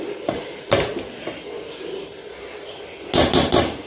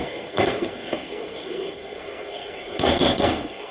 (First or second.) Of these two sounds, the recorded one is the first